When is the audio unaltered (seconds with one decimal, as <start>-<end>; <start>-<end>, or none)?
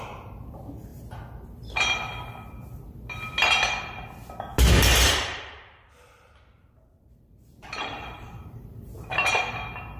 0.0-4.9; 9.4-10.0